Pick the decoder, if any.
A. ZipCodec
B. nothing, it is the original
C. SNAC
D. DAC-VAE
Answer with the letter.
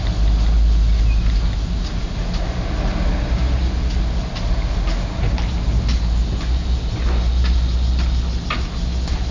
B